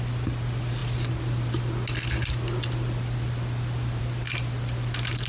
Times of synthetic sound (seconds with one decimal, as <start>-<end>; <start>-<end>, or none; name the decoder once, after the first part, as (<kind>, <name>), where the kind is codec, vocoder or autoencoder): none